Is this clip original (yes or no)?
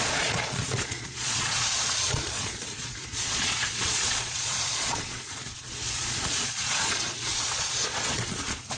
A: no